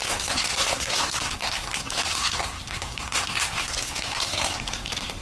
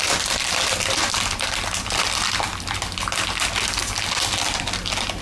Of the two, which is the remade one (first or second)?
first